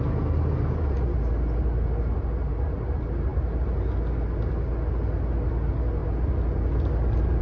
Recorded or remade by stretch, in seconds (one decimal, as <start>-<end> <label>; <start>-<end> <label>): 0.0-7.4 recorded